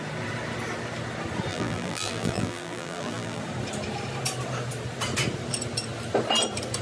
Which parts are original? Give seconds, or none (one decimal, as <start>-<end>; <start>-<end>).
0.0-1.5; 3.4-6.8